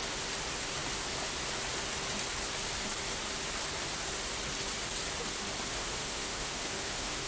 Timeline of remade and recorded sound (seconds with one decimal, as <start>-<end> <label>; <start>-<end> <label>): 0.0-5.7 recorded; 5.7-7.3 remade